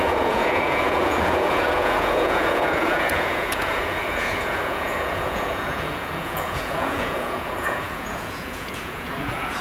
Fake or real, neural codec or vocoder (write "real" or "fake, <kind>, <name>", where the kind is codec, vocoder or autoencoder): fake, vocoder, Vocos